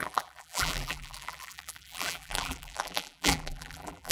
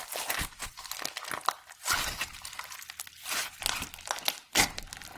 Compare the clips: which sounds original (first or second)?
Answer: second